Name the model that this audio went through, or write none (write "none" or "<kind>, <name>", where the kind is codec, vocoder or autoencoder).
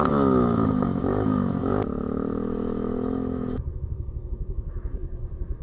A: autoencoder, DAC-VAE